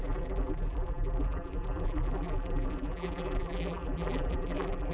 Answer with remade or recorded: remade